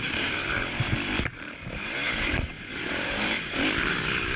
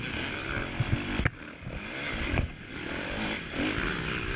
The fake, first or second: first